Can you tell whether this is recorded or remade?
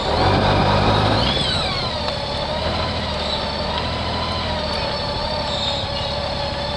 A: recorded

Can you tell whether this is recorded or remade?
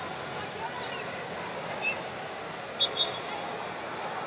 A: recorded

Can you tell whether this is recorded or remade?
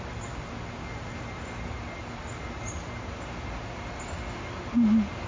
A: recorded